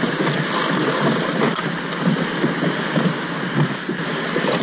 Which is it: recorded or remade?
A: recorded